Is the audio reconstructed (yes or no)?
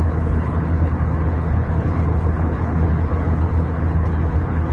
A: yes